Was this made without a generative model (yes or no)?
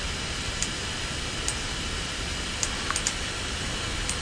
yes